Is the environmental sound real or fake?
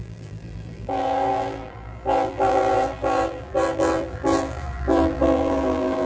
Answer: fake